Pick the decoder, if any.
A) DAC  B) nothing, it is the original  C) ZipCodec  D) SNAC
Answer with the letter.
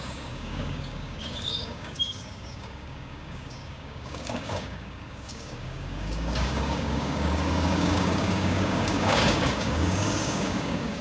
A